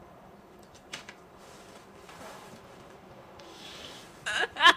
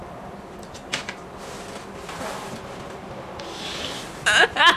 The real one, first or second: second